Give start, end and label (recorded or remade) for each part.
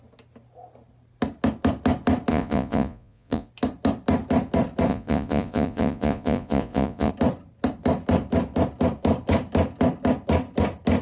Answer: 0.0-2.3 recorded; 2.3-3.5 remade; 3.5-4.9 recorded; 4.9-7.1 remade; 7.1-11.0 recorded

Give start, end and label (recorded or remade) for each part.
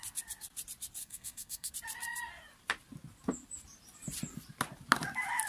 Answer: 0.0-1.0 recorded; 1.0-1.7 remade; 1.7-5.5 recorded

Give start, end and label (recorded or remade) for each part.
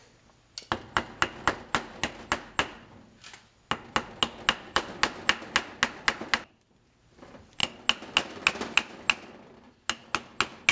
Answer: 0.0-10.7 recorded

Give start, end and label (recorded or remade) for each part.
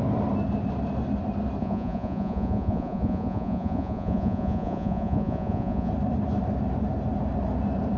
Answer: 0.0-1.6 recorded; 1.6-5.9 remade; 5.9-8.0 recorded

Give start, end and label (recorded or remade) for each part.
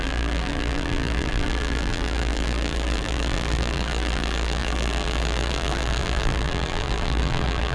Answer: 0.0-7.7 remade